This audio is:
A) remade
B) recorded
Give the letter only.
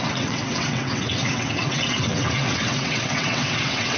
A